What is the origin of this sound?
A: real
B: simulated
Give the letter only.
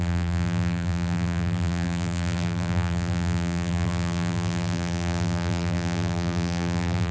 B